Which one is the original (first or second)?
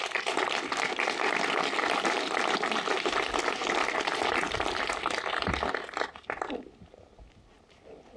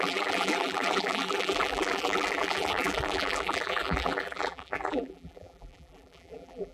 first